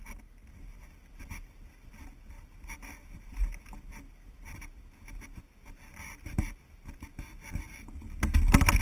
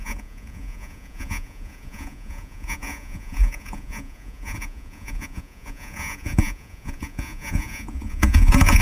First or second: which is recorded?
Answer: first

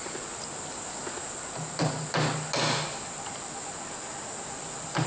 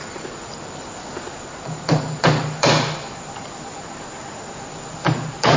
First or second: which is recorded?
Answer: first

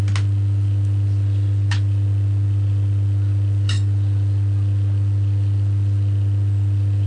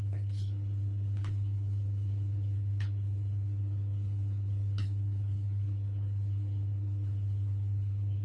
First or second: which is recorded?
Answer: first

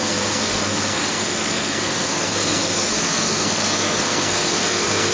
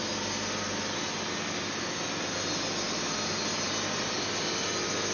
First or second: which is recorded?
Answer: second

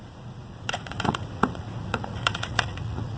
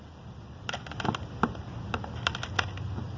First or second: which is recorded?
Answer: second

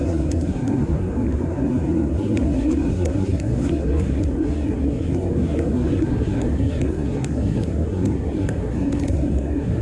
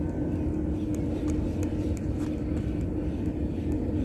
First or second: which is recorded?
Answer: second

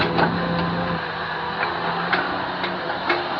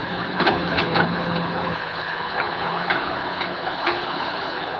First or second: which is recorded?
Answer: first